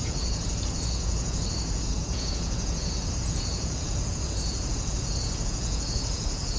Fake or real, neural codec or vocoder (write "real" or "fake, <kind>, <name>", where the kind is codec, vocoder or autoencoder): fake, vocoder, Vocos